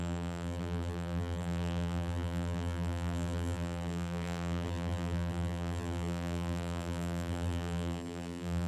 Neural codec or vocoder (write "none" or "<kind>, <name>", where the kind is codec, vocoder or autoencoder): vocoder, BigVGAN v2